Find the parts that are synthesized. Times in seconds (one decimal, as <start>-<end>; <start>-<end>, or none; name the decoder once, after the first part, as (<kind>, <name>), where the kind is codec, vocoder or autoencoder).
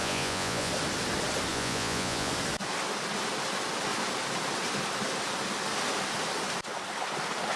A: 0.0-0.7 (vocoder, Vocos); 1.5-2.3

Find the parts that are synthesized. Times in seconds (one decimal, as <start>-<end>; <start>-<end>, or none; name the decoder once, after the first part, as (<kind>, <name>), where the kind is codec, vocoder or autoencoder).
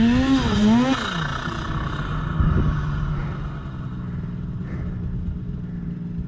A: none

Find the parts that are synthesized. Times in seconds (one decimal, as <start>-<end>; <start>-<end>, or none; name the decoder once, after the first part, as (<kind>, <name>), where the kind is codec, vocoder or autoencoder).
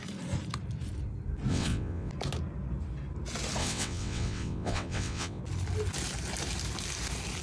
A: 1.5-2.1 (vocoder, WaveNeXt); 3.6-5.4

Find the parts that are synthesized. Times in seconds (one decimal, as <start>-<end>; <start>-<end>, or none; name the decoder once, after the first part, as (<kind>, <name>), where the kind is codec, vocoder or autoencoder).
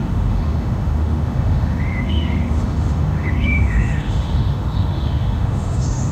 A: 0.0-6.1 (autoencoder, DAC-VAE)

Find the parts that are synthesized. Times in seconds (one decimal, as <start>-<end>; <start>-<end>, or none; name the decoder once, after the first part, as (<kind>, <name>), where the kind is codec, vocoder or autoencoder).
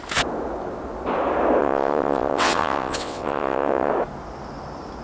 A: 1.6-3.9 (vocoder, WaveNeXt)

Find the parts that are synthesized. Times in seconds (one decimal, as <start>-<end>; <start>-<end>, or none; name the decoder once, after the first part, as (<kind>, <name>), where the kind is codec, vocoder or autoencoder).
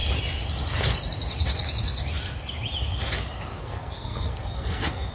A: 3.5-5.1 (codec, SNAC)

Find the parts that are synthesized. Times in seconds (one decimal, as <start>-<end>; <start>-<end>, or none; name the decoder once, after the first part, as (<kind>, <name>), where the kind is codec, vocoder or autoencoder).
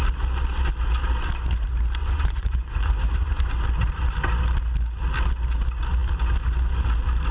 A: 2.0-3.5 (vocoder, Vocos)